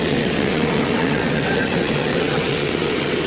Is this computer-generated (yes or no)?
yes